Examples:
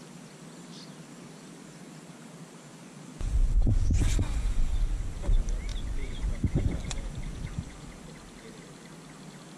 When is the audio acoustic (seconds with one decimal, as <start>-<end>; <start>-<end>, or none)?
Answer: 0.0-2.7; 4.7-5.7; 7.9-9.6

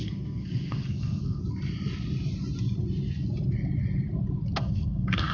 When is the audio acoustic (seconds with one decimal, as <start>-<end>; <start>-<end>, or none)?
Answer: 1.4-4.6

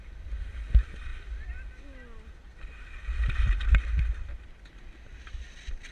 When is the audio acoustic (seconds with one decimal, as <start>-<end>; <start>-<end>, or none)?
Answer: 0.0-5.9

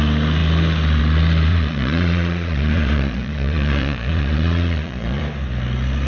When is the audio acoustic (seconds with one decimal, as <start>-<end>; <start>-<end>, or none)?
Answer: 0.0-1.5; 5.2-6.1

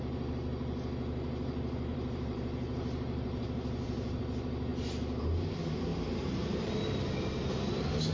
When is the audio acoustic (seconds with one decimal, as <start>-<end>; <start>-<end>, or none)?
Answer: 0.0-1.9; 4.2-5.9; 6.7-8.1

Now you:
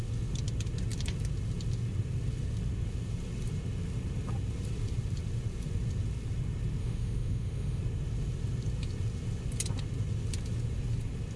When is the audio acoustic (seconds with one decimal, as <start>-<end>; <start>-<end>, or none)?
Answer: 0.0-6.8; 7.8-11.4